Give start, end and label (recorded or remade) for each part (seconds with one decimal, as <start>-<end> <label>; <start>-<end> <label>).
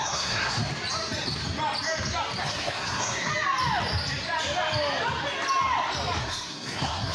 0.0-0.6 remade; 0.6-2.4 recorded; 2.4-3.3 remade; 3.3-6.2 recorded; 6.2-7.1 remade